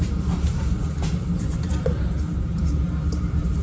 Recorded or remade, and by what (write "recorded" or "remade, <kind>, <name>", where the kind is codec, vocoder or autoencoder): remade, vocoder, BigVGAN v2